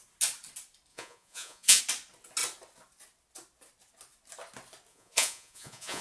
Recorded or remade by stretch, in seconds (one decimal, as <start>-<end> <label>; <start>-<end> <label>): 0.0-0.9 recorded; 0.9-1.8 remade; 1.8-4.9 recorded; 4.9-6.0 remade